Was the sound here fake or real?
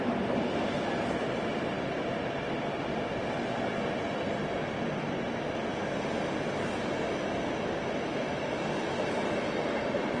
real